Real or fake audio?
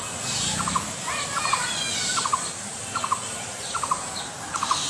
real